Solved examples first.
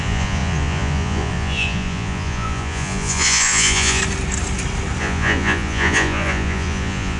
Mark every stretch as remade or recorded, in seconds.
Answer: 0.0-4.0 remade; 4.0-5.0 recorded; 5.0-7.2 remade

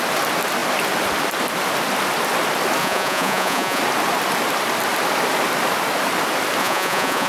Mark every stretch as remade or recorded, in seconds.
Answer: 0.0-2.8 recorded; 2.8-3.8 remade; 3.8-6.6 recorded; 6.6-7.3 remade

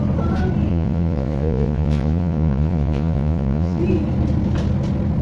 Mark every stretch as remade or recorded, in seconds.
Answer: 0.0-0.7 recorded; 0.7-3.8 remade; 3.8-5.2 recorded